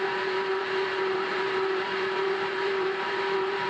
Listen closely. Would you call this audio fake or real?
fake